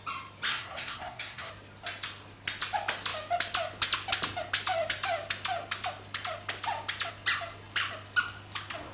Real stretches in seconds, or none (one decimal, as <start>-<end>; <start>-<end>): 0.0-0.5; 1.5-8.9